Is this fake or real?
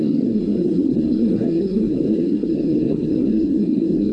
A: fake